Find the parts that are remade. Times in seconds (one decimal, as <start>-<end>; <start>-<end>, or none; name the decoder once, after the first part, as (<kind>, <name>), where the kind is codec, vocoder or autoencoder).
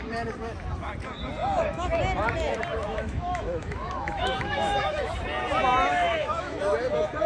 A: 1.4-2.0 (autoencoder, DAC-VAE); 2.7-5.1; 5.9-6.6